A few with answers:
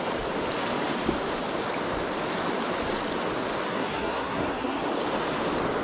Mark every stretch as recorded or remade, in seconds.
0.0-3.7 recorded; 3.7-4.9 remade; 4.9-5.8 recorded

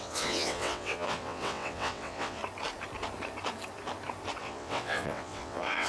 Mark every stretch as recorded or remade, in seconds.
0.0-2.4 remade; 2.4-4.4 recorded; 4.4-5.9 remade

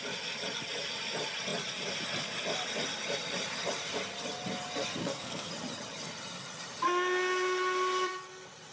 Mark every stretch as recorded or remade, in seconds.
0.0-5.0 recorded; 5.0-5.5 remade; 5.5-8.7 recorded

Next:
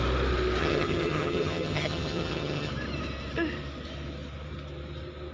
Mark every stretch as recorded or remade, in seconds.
0.0-0.6 recorded; 0.6-2.7 remade; 2.7-5.3 recorded

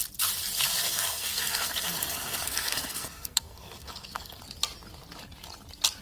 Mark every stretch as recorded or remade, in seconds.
0.0-0.8 recorded; 0.8-4.4 remade; 4.4-6.0 recorded